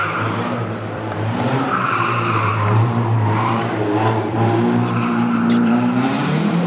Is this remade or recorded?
remade